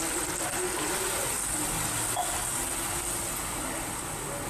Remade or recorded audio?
recorded